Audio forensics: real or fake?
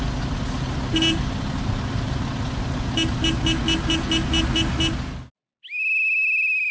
real